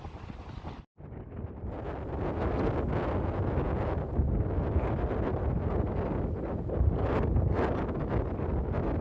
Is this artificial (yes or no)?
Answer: no